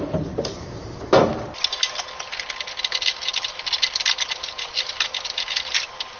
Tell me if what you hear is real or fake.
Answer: real